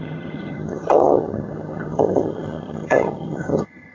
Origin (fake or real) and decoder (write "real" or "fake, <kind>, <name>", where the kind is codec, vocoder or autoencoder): fake, vocoder, HiFi-GAN